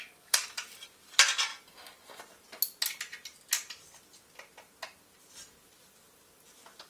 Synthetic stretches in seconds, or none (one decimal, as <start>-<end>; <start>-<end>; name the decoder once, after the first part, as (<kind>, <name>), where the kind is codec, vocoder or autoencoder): 0.0-1.5 (vocoder, BigVGAN v2); 5.6-6.9